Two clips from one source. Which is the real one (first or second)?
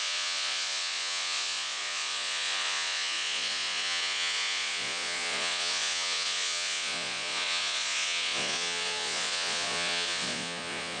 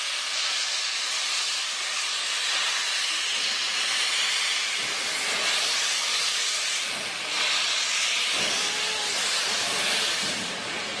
second